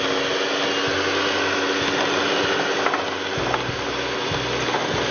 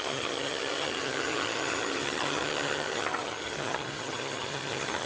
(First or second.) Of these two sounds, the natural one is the first